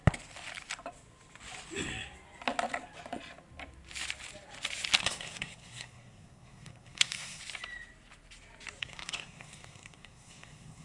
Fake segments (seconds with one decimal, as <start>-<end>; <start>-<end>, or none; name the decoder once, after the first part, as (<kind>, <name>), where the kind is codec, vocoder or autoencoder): 5.0-7.4 (codec, SNAC); 8.8-10.8